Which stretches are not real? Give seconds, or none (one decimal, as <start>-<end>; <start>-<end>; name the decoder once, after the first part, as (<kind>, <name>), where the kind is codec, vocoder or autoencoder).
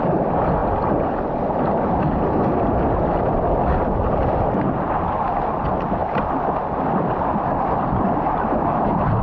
none